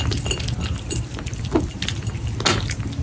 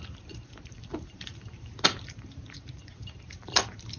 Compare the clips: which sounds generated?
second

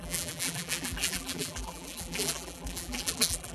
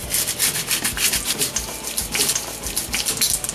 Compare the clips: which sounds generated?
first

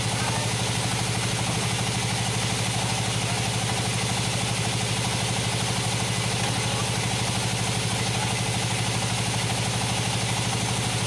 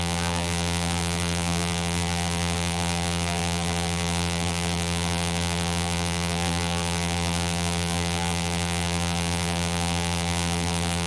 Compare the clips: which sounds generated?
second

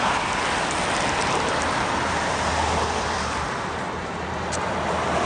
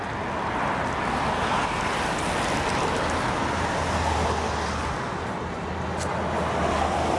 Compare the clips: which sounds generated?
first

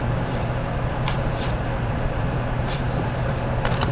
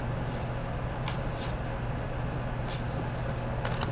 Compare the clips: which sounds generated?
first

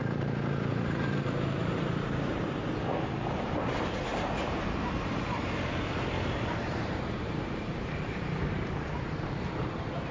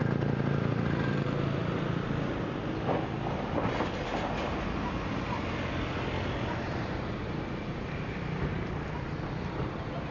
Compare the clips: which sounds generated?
first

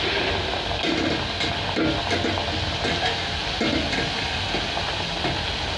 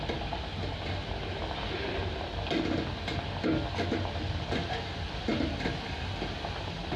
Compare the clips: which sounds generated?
second